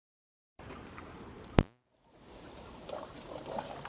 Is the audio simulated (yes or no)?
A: yes